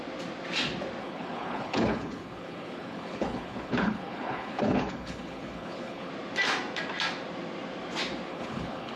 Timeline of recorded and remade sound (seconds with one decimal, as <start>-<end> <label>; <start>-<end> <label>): 0.0-1.0 recorded; 1.0-6.1 remade; 6.1-8.3 recorded; 8.3-9.0 remade